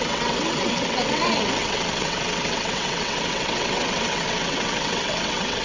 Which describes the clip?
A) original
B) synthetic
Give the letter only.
B